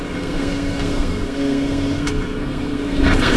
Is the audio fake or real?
fake